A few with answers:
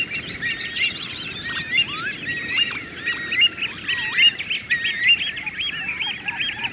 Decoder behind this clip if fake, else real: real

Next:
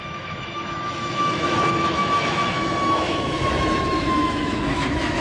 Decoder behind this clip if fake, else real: fake, autoencoder, DAC-VAE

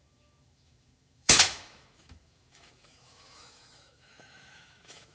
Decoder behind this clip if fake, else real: fake, autoencoder, DAC-VAE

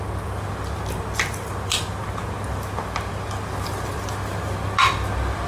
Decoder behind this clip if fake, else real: real